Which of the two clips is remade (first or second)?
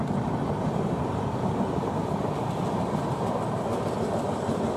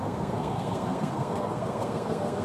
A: second